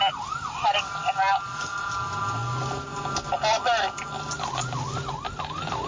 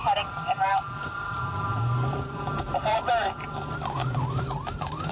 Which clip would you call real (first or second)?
first